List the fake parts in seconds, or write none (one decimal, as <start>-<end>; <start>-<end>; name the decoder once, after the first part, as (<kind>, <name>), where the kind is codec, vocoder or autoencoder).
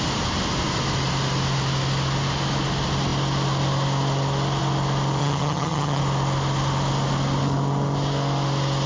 5.2-6.0 (vocoder, HiFi-GAN)